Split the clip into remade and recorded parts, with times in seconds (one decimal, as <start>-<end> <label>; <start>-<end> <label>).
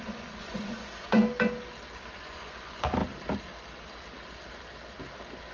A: 0.0-1.2 remade; 1.2-2.2 recorded; 2.2-3.0 remade; 3.0-5.5 recorded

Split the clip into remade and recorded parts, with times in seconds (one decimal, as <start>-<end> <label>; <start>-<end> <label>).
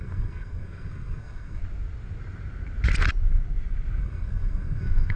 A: 0.0-1.6 remade; 1.6-4.0 recorded; 4.0-5.2 remade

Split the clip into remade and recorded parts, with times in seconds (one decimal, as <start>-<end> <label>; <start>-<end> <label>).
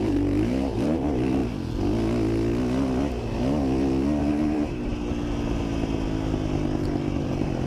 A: 0.0-1.4 remade; 1.4-4.2 recorded; 4.2-4.9 remade; 4.9-7.2 recorded; 7.2-7.7 remade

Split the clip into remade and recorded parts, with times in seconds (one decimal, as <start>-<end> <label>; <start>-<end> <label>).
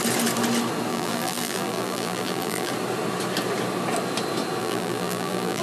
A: 0.0-0.9 recorded; 0.9-2.7 remade; 2.7-4.6 recorded; 4.6-5.6 remade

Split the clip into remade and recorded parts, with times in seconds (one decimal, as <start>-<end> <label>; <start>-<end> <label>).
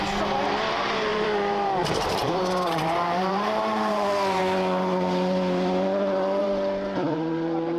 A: 0.0-1.1 recorded; 1.1-4.4 remade; 4.4-6.4 recorded; 6.4-7.8 remade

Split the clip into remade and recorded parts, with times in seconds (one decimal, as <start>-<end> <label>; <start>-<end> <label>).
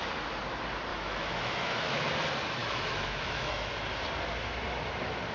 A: 0.0-0.9 recorded; 0.9-2.1 remade; 2.1-2.6 recorded; 2.6-3.7 remade; 3.7-5.3 recorded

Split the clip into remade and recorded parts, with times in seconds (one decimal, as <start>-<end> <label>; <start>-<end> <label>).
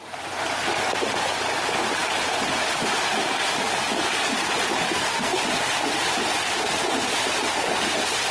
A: 0.0-4.9 recorded; 4.9-5.4 remade; 5.4-8.3 recorded